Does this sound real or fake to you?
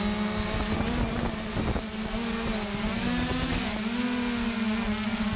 real